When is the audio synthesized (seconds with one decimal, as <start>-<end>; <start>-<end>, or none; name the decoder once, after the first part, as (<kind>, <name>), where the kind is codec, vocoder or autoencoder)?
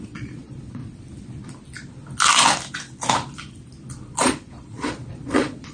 0.0-0.8 (vocoder, Vocos); 4.2-5.7